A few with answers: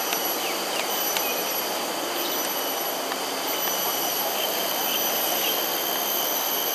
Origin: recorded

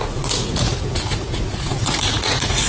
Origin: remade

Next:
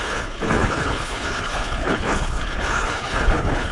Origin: remade